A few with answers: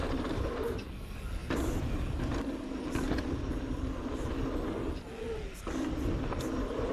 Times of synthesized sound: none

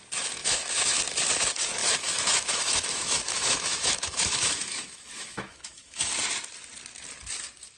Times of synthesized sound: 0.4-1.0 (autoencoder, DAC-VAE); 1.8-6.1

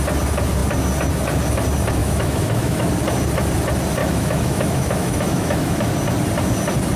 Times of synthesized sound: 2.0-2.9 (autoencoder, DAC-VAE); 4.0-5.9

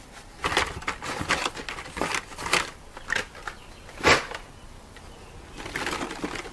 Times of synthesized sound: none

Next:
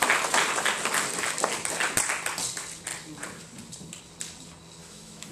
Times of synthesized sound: 4.8-5.3 (autoencoder, DAC-VAE)

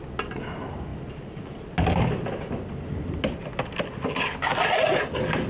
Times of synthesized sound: none